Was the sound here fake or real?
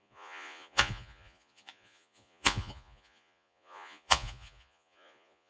fake